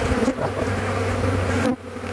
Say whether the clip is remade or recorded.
recorded